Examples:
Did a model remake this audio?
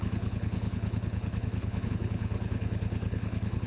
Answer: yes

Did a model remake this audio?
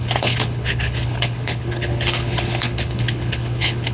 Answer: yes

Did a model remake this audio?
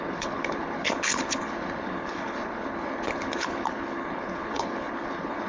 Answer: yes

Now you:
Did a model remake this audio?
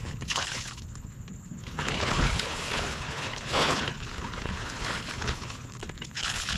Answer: yes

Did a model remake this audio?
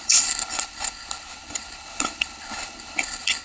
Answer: yes